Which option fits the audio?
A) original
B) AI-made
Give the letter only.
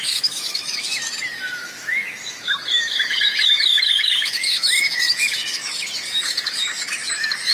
B